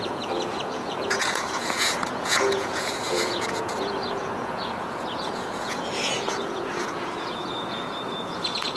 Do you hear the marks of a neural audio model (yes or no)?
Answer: yes